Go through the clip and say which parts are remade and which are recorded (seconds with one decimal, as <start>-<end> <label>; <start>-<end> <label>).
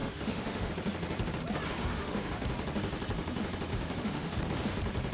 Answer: 0.0-0.7 remade; 0.7-1.8 recorded; 1.8-2.3 remade; 2.3-3.7 recorded; 3.7-4.4 remade; 4.4-5.1 recorded